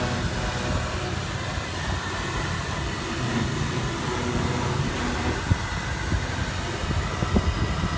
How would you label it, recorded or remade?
recorded